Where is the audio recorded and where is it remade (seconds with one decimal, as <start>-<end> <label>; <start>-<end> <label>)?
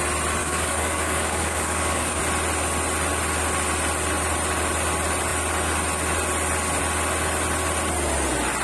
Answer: 0.0-0.4 recorded; 0.4-2.2 remade; 2.2-8.6 recorded